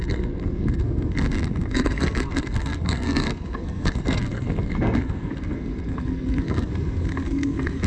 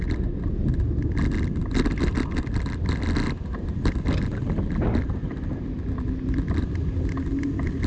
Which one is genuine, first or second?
second